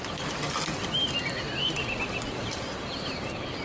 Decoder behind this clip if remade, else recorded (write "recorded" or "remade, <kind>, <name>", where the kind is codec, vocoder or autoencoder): recorded